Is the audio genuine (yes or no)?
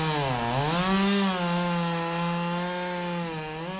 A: yes